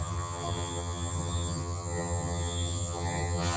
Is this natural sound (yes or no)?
no